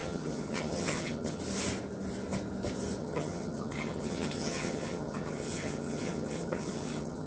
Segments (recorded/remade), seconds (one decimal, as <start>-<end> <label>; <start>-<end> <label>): 0.0-1.4 remade; 1.4-3.0 recorded; 3.0-7.3 remade